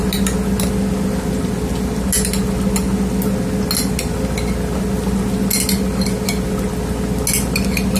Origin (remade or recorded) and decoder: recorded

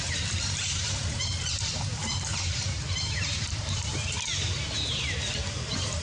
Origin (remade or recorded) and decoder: remade, vocoder, BigVGAN v2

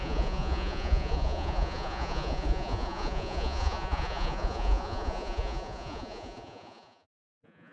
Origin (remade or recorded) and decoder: remade, vocoder, Vocos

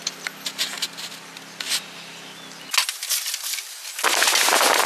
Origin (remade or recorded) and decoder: recorded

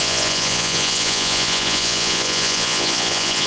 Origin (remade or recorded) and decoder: remade, vocoder, Vocos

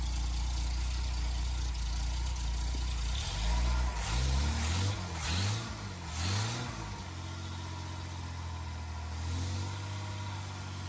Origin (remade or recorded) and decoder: recorded